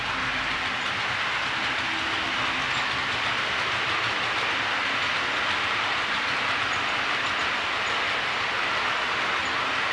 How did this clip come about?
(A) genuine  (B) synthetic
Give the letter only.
A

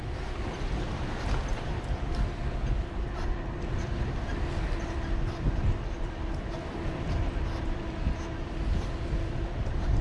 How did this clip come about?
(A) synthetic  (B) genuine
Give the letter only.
B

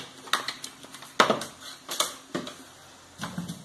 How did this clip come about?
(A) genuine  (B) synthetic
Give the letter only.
A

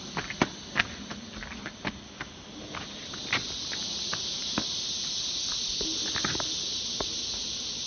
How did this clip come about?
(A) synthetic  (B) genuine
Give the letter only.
B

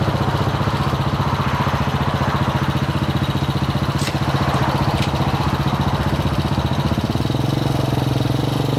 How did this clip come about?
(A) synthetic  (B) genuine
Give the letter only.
B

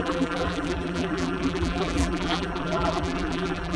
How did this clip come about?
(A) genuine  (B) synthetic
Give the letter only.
B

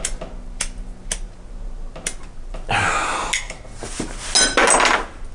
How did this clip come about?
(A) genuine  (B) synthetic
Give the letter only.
A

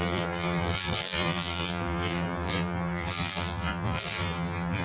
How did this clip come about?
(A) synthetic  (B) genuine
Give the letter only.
A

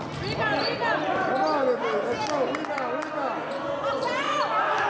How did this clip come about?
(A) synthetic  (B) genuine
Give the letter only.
B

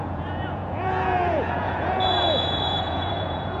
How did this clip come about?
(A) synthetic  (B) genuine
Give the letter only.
A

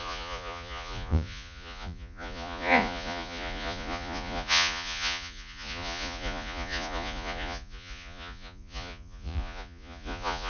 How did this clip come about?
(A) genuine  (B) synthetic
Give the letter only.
B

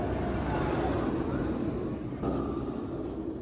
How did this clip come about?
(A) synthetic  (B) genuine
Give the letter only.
B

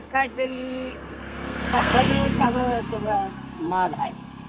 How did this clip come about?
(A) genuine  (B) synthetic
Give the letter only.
B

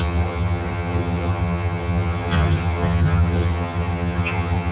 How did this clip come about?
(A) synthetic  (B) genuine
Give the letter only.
A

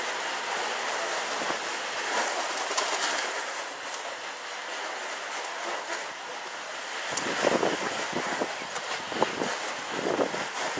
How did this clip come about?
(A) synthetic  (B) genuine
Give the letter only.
B